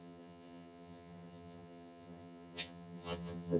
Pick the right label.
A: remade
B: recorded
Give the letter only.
A